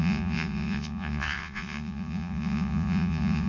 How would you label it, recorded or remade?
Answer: remade